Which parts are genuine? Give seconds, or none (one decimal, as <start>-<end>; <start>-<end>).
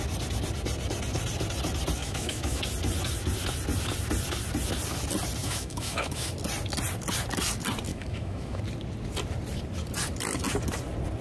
0.0-2.0; 2.6-5.4; 6.3-7.9; 8.6-11.2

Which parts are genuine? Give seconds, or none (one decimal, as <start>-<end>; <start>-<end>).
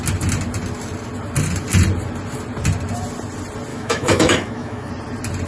0.0-3.7; 4.9-5.5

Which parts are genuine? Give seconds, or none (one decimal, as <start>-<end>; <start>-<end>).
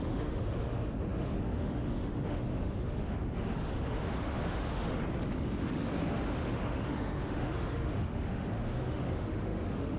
5.0-5.6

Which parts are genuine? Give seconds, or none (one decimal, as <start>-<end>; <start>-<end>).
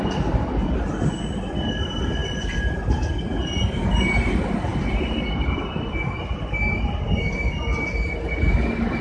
0.0-9.0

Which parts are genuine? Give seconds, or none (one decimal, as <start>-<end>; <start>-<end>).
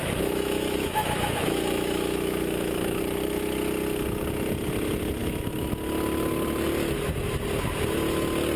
3.0-5.2; 5.7-8.6